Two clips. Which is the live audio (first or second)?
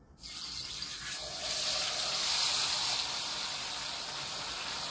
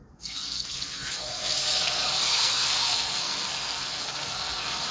first